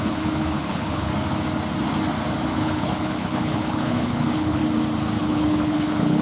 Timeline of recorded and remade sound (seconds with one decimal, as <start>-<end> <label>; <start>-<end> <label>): 0.0-1.1 remade; 1.1-2.5 recorded; 2.5-4.6 remade; 4.6-5.2 recorded; 5.2-6.2 remade